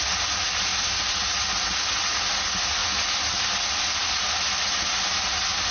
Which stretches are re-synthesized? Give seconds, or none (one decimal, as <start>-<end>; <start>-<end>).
none